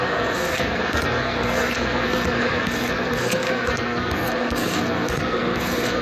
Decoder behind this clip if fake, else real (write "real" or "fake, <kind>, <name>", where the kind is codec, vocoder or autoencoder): fake, codec, SNAC